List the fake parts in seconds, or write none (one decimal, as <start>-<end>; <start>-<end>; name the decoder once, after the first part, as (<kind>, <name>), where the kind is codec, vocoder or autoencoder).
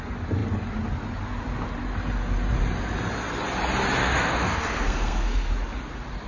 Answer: 4.0-5.5 (codec, SNAC)